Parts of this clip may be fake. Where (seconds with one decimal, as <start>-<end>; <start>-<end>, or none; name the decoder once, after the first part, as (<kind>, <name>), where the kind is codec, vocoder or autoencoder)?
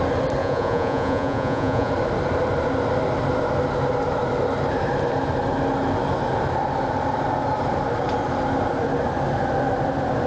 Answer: 0.4-1.9 (vocoder, Vocos)